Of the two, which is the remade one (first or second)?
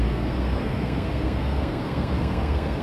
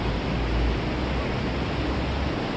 first